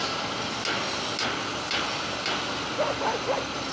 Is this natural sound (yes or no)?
yes